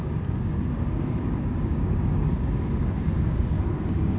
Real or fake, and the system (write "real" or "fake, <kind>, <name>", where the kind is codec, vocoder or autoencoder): fake, codec, DAC